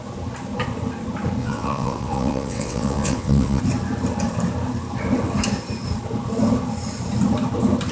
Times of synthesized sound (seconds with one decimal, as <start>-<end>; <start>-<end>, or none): 1.4-3.6